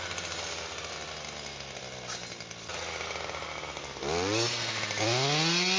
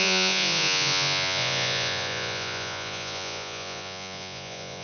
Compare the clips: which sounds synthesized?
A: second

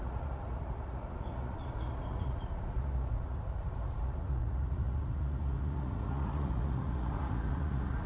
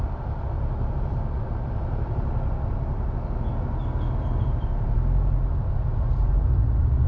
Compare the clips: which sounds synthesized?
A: first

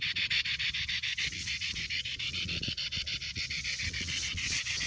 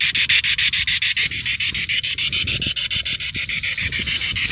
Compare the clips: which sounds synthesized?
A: first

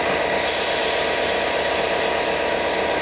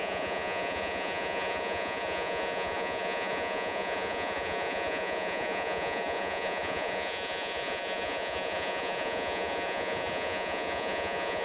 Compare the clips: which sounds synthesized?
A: second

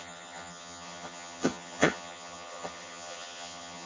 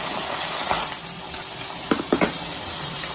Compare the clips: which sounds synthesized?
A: first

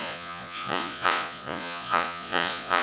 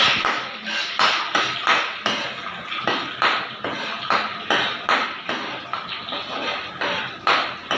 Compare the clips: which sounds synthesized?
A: first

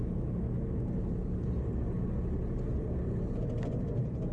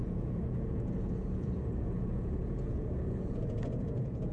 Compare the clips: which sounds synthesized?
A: second